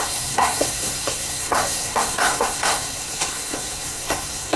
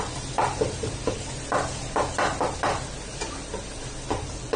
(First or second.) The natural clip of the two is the second